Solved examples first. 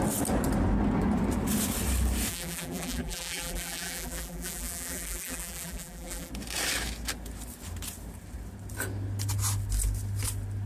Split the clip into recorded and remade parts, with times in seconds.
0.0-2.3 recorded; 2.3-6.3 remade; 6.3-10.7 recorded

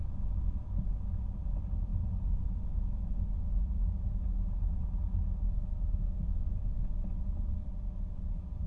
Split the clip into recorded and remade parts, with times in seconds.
0.0-8.7 recorded

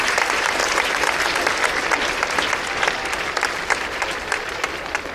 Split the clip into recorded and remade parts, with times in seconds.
0.0-0.6 remade; 0.6-3.7 recorded; 3.7-5.1 remade

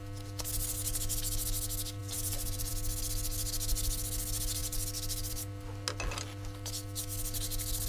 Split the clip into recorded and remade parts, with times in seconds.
0.0-2.0 recorded; 2.0-2.7 remade; 2.7-7.9 recorded

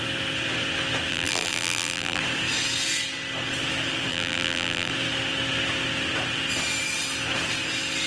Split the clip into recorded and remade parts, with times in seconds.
0.0-1.1 recorded; 1.1-2.2 remade; 2.2-4.1 recorded; 4.1-4.9 remade; 4.9-8.1 recorded

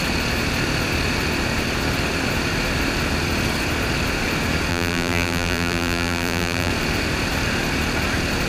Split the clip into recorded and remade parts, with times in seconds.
0.0-4.7 recorded; 4.7-6.7 remade; 6.7-8.5 recorded

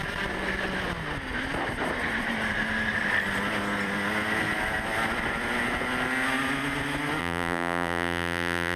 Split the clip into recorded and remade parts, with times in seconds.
0.0-7.2 recorded; 7.2-8.8 remade

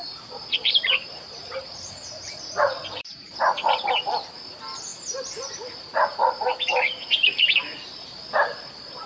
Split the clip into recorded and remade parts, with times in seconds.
0.0-9.1 remade